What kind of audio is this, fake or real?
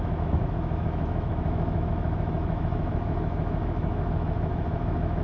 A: fake